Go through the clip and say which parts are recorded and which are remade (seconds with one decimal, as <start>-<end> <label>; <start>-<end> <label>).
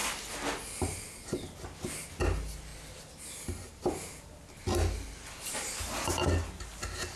0.0-1.2 remade; 1.2-7.2 recorded